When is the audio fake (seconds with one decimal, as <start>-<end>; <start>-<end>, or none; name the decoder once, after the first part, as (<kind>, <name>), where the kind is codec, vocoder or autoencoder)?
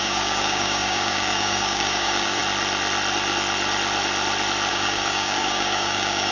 0.0-2.4 (codec, DAC); 4.7-6.3